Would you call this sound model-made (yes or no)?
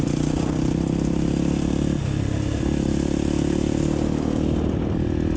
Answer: no